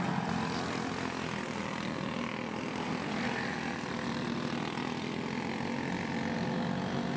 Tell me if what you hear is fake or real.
real